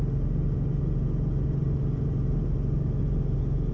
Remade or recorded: recorded